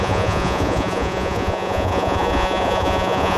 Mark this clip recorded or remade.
remade